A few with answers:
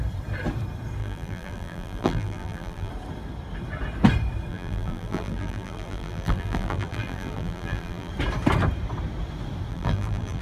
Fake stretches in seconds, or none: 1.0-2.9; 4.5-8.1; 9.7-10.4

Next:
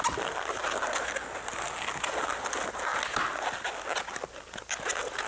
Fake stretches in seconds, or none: none

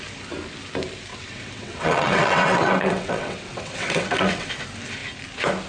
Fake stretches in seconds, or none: 1.1-4.5